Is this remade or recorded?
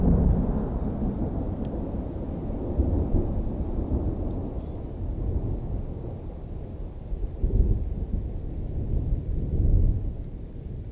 recorded